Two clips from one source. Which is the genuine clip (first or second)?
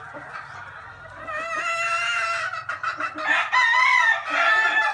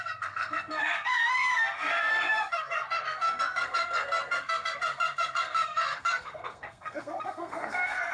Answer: first